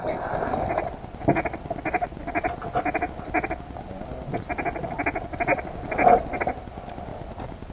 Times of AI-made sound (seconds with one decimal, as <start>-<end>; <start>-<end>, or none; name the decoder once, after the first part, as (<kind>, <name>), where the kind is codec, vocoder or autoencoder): 7.1-7.7 (vocoder, BigVGAN v2)